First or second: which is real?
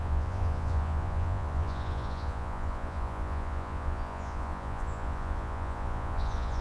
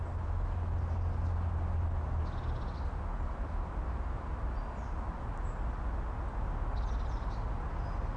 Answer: second